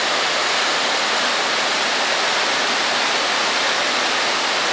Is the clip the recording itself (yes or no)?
yes